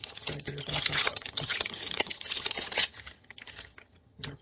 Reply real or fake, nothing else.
fake